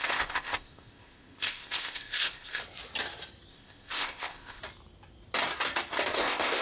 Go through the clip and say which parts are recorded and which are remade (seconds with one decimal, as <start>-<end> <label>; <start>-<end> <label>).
0.0-2.6 remade; 2.6-3.5 recorded; 3.5-4.6 remade; 4.6-6.1 recorded; 6.1-6.6 remade